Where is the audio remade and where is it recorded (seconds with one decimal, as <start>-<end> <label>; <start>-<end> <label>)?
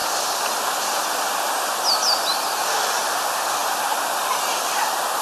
0.0-0.5 recorded; 0.5-2.3 remade; 2.3-3.0 recorded; 3.0-3.6 remade; 3.6-4.8 recorded; 4.8-5.2 remade